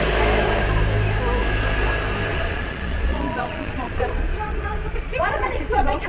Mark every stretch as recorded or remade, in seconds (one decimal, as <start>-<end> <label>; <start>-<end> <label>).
0.0-2.3 recorded; 2.3-6.1 remade